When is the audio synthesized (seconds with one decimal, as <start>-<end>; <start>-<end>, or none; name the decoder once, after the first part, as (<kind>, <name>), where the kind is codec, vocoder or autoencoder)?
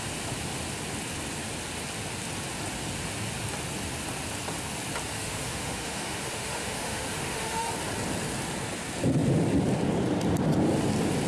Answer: 5.1-7.7 (autoencoder, DAC-VAE)